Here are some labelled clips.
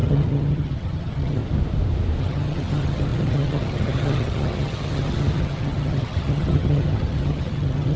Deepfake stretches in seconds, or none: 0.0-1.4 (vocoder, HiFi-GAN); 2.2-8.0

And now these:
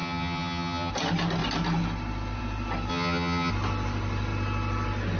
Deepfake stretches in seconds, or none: 0.0-0.9 (vocoder, HiFi-GAN); 2.9-3.5